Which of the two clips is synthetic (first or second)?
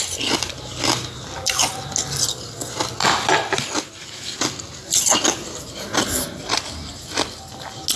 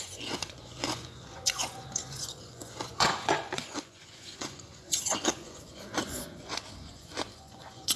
second